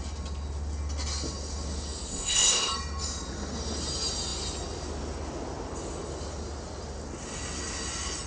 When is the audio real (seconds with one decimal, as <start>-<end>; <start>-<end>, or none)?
0.0-2.1; 2.7-8.3

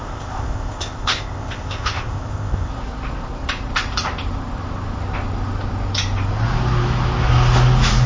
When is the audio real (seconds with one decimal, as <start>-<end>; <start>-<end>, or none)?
2.7-8.1

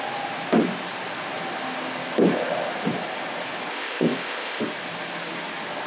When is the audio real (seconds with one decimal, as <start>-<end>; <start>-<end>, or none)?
0.0-3.7; 4.6-5.9

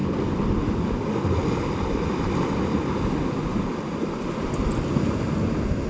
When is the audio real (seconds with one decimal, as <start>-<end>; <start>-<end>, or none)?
0.0-5.9